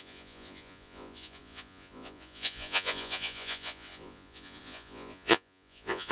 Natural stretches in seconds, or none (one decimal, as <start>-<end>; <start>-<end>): none